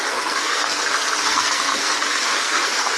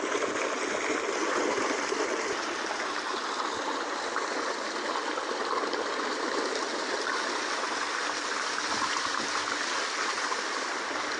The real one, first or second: second